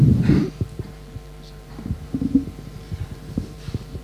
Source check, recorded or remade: remade